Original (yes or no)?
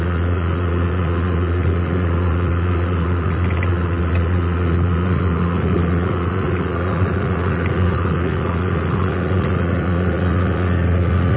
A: no